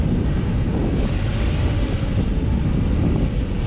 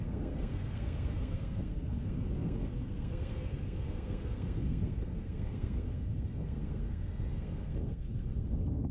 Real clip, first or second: first